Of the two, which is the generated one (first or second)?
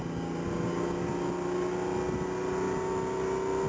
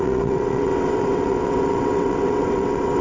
second